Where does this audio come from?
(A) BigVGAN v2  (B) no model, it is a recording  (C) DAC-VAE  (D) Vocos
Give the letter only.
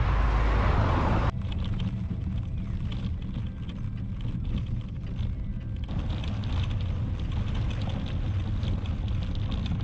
B